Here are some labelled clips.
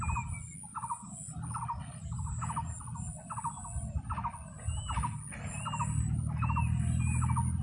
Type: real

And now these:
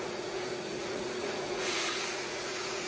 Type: fake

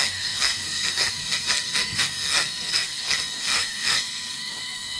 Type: fake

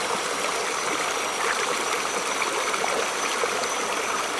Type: real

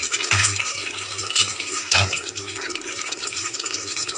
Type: fake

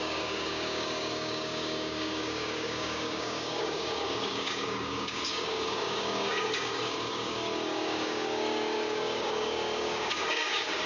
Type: fake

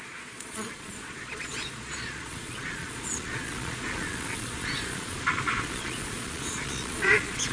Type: fake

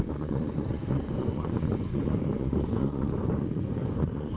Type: fake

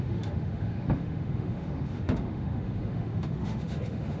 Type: fake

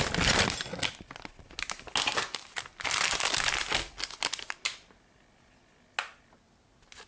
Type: real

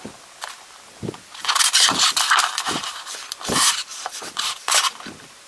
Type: real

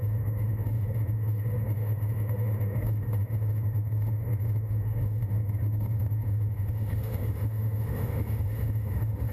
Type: fake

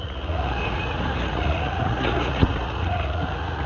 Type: fake